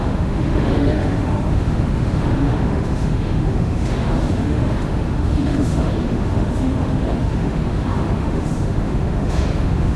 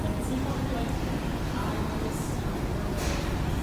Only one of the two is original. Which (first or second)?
second